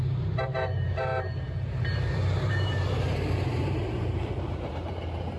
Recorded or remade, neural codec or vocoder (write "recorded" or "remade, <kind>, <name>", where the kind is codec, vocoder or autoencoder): remade, vocoder, BigVGAN v2